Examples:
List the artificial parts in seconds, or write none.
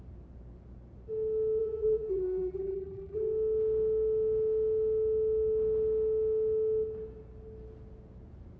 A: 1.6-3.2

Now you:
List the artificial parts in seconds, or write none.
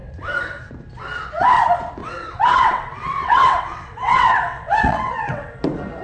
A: 0.0-0.7; 2.0-5.6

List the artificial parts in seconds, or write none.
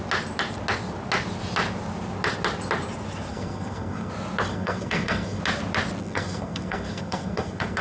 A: 3.3-4.1; 4.5-5.4; 6.0-7.8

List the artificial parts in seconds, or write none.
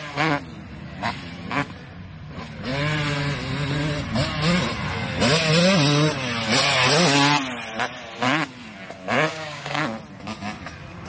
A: 9.3-9.8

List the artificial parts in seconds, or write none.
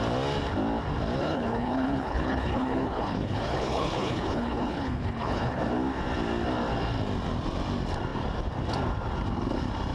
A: 1.2-5.6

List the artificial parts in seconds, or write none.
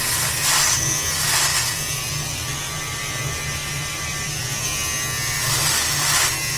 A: 1.5-4.4